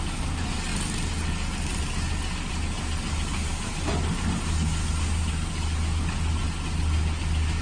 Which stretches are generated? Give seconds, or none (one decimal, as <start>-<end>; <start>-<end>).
none